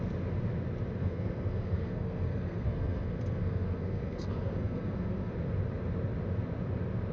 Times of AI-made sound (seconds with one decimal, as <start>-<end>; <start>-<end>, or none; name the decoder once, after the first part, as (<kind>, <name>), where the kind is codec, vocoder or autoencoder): 1.0-5.3 (codec, SNAC)